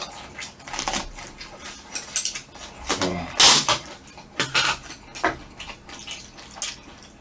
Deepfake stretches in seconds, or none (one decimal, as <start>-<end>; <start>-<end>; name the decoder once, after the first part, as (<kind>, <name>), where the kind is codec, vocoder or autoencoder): none